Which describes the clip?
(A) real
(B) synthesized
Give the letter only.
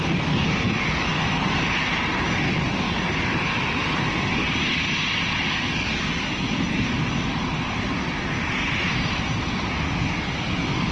A